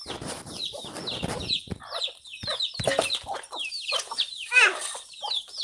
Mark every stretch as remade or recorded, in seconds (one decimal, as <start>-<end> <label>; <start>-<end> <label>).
0.0-5.6 recorded